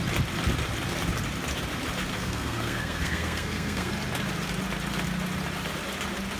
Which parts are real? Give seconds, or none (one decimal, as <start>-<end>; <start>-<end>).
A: 0.0-2.1; 3.9-6.4